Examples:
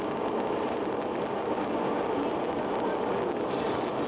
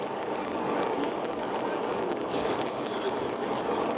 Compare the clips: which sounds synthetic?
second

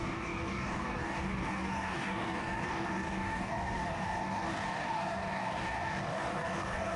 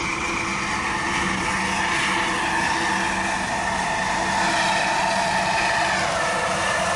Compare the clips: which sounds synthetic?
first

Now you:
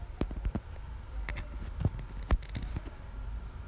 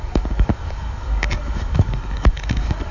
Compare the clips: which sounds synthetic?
second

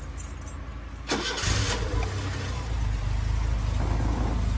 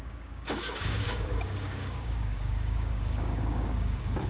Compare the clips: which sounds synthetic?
second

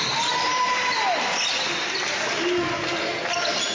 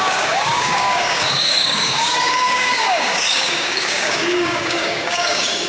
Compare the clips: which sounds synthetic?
second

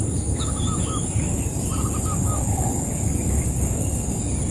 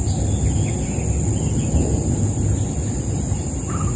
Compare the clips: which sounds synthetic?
first